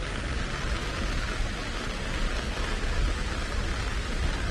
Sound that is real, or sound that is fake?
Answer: real